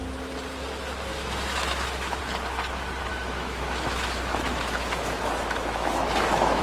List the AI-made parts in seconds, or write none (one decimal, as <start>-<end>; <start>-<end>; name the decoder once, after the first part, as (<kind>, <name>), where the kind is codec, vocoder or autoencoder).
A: 1.1-2.2 (autoencoder, DAC-VAE); 3.1-6.6